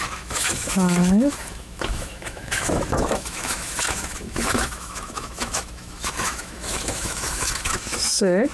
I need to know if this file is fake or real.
fake